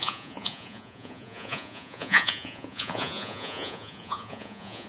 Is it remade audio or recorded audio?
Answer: remade